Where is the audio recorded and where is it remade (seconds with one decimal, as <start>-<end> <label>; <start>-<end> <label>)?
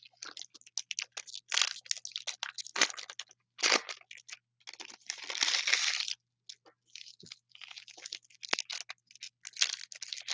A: 0.0-10.3 recorded